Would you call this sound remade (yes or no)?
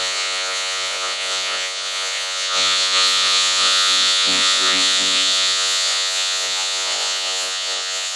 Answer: yes